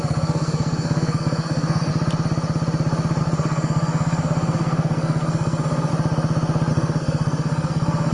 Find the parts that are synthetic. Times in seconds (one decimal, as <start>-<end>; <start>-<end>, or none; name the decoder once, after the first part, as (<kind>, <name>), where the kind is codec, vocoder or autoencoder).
0.0-1.9 (codec, SNAC); 3.2-5.9; 6.7-8.1